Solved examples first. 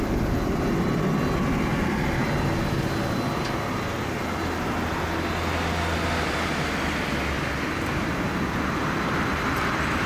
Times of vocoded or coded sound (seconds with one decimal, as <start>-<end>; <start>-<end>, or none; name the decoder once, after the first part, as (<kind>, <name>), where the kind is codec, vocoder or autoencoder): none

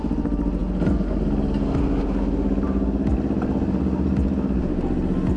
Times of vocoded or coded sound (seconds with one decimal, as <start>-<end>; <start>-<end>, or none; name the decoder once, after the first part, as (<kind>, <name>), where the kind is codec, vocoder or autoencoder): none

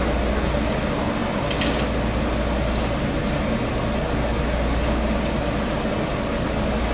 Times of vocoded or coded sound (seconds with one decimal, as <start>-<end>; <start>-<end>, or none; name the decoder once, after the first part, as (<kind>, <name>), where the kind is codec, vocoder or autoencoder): none

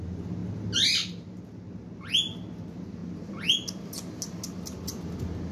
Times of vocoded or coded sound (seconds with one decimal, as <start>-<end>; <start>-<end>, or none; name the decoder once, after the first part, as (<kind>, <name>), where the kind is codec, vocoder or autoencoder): none

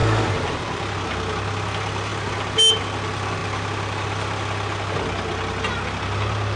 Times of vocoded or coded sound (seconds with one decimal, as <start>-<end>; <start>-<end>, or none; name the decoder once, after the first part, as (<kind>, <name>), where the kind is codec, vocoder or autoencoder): none

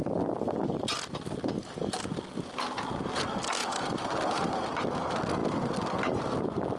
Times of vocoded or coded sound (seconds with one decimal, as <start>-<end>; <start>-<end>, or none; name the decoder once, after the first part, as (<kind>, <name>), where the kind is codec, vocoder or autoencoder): 3.6-4.9 (vocoder, BigVGAN v2)